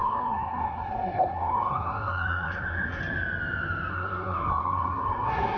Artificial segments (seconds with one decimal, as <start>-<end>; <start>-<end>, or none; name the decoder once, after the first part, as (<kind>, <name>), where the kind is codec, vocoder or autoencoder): 0.0-3.0 (codec, SNAC); 3.9-5.6